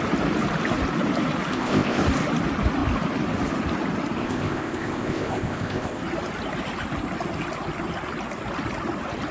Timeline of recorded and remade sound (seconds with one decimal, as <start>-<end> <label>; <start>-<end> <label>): 0.0-1.5 recorded; 1.5-2.0 remade; 2.0-4.2 recorded; 4.2-6.0 remade; 6.0-9.3 recorded